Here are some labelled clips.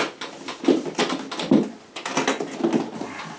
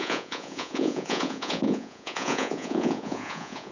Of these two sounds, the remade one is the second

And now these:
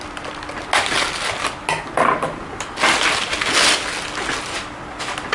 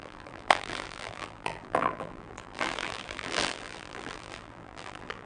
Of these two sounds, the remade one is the second